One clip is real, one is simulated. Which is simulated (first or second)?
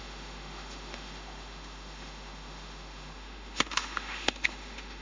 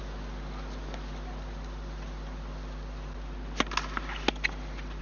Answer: first